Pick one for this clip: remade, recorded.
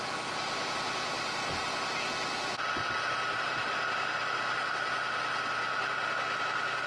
recorded